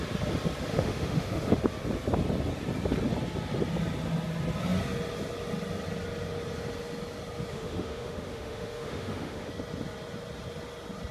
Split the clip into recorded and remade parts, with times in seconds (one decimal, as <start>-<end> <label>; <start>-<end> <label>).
0.0-0.7 recorded; 0.7-1.6 remade; 1.6-7.5 recorded; 7.5-9.5 remade; 9.5-11.1 recorded